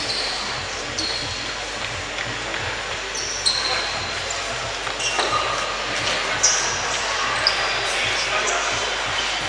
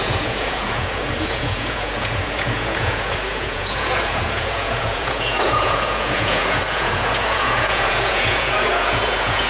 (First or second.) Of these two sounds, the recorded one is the first